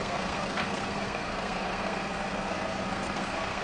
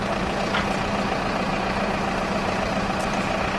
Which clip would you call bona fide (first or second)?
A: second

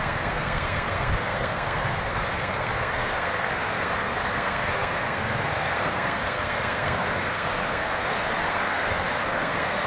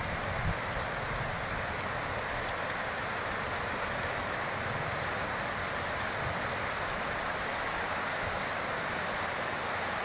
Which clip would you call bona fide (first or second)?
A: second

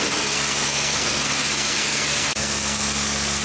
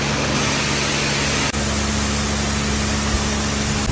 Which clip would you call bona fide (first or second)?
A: second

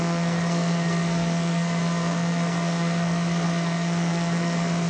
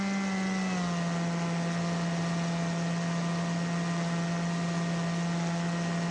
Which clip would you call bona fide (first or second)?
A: second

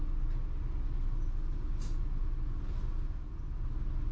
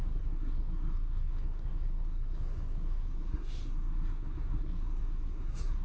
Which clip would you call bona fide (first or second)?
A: first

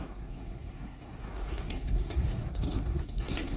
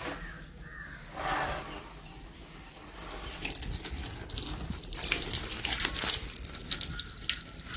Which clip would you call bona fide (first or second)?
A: second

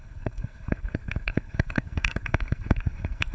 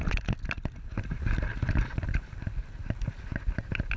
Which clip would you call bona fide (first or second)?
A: second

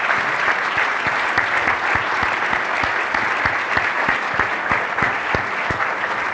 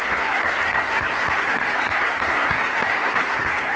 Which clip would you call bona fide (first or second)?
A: first